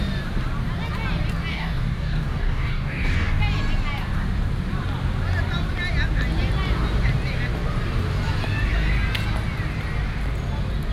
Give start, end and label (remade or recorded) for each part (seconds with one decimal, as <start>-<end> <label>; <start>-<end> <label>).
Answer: 0.0-1.5 recorded; 1.5-3.4 remade; 3.4-10.9 recorded